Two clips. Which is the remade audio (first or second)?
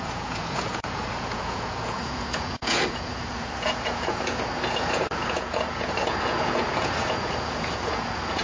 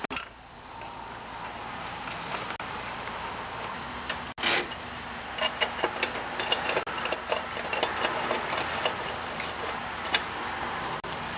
first